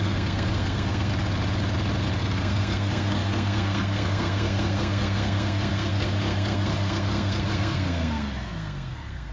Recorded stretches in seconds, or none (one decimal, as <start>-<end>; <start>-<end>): 1.1-2.2